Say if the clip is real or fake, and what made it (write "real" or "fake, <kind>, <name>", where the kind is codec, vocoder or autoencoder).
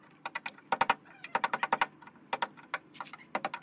real